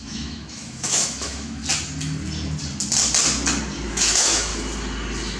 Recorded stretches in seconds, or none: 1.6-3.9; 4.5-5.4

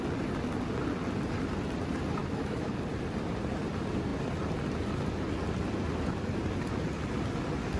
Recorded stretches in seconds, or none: 0.0-2.2; 2.7-7.8